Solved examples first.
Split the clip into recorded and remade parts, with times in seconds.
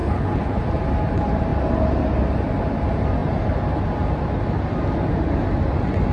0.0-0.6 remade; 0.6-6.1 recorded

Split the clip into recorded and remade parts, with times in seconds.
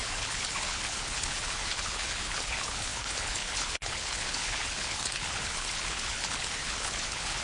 0.0-7.4 remade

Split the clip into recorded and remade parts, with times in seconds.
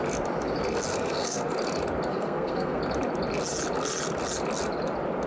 0.0-0.9 recorded; 0.9-1.5 remade; 1.5-2.1 recorded; 2.1-2.8 remade; 2.8-5.3 recorded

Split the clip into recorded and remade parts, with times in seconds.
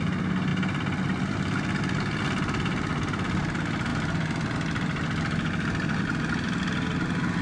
0.0-7.4 recorded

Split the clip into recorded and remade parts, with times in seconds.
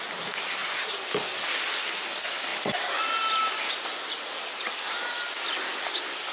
0.0-6.3 recorded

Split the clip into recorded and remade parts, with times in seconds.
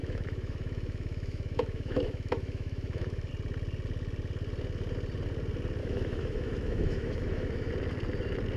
0.0-3.3 remade; 3.3-5.8 recorded; 5.8-7.7 remade; 7.7-8.6 recorded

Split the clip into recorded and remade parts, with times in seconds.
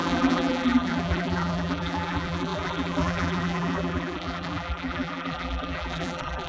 0.0-6.5 remade